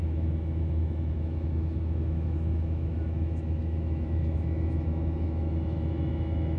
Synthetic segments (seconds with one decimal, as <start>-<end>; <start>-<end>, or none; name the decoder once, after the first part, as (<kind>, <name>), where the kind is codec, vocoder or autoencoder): 0.0-6.6 (autoencoder, DAC-VAE)